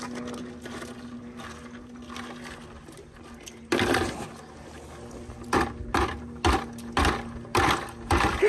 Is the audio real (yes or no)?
yes